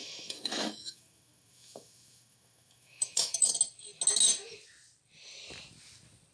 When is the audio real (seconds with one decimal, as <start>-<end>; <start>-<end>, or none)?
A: 3.5-6.3